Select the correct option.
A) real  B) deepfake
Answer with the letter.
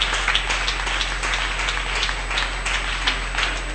A